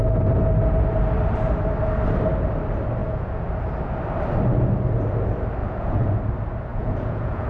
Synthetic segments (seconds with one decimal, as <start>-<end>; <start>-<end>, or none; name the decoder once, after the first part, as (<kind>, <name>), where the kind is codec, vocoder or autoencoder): 3.0-3.5 (vocoder, Vocos); 5.6-6.2; 6.7-7.5